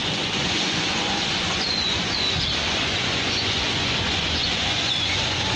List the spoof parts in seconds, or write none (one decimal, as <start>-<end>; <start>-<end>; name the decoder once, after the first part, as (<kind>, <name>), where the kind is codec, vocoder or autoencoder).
0.0-5.6 (vocoder, Vocos)